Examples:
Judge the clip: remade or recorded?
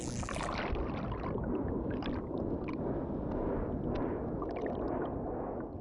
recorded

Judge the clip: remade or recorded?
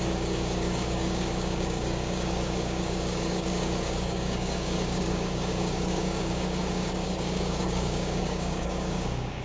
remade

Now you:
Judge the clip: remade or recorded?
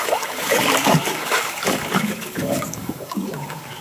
remade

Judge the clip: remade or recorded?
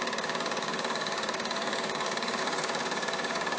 remade